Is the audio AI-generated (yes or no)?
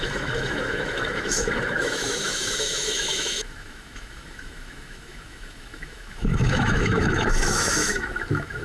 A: yes